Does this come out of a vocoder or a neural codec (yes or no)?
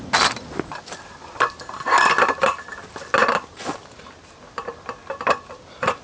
no